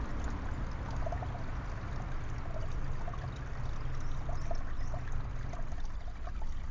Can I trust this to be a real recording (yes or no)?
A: yes